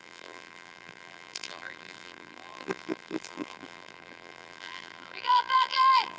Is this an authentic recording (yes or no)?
no